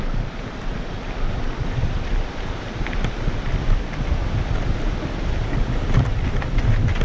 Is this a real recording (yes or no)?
no